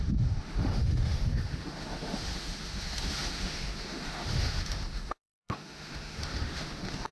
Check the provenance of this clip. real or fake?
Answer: fake